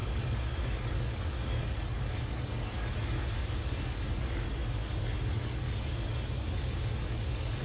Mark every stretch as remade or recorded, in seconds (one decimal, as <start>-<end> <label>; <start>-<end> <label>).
0.0-7.6 remade